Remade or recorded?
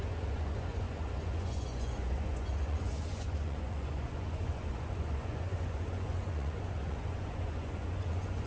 remade